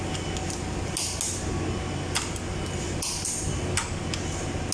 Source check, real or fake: real